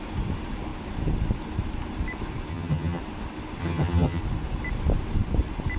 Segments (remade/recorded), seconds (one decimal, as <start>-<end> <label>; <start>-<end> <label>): 0.0-2.5 recorded; 2.5-3.0 remade; 3.0-3.6 recorded; 3.6-4.2 remade; 4.2-5.8 recorded